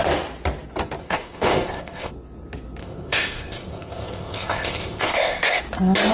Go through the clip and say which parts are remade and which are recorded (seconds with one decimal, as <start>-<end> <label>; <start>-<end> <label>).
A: 0.0-1.0 recorded; 1.0-2.1 remade; 2.1-2.8 recorded; 2.8-5.6 remade; 5.6-6.1 recorded